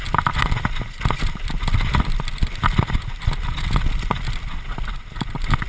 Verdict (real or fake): real